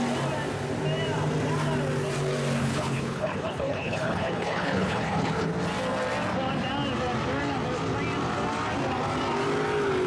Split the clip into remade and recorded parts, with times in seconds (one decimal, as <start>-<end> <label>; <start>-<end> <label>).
0.0-2.6 recorded; 2.6-5.5 remade; 5.5-10.1 recorded